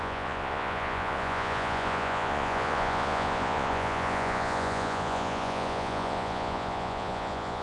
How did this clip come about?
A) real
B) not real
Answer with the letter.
B